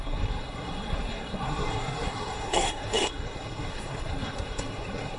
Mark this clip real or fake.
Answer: fake